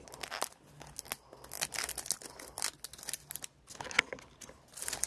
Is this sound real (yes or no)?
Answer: yes